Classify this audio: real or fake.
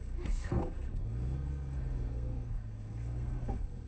fake